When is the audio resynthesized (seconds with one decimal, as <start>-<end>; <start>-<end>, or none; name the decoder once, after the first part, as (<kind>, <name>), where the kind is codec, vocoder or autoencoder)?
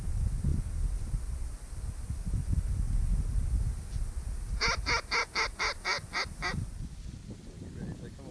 none